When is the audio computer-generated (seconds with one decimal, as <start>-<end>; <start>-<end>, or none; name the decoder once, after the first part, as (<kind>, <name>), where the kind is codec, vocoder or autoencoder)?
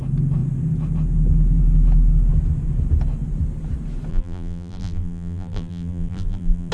4.1-6.7 (vocoder, BigVGAN v2)